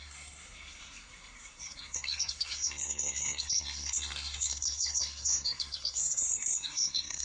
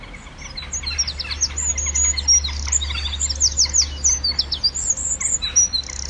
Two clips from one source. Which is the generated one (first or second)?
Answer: first